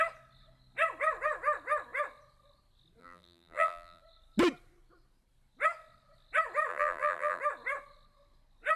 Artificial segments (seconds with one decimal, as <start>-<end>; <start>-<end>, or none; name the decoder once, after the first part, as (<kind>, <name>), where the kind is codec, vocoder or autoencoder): 3.0-4.0 (vocoder, BigVGAN v2); 6.7-7.4